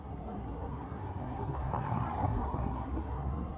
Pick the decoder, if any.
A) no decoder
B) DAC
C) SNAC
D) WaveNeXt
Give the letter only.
C